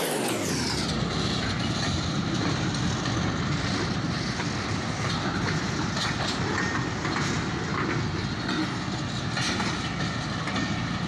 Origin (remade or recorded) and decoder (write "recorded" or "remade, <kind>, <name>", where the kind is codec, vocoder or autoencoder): recorded